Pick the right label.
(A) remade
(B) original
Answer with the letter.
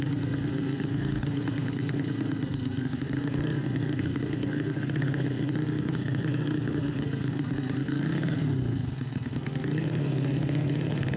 A